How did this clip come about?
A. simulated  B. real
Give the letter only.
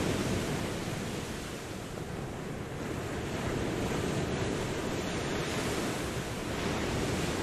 A